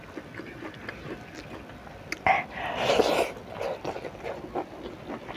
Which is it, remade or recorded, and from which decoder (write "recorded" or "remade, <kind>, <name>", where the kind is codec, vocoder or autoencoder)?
recorded